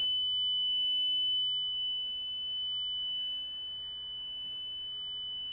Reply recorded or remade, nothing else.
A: recorded